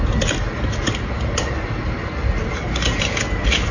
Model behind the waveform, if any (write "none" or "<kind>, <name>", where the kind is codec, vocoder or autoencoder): none